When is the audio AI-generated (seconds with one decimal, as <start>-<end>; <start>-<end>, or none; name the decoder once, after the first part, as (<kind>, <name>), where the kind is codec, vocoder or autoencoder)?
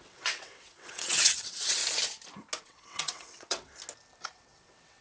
0.0-1.8 (vocoder, WaveNeXt); 2.6-3.7; 4.3-5.0